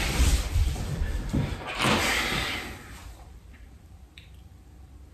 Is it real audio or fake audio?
fake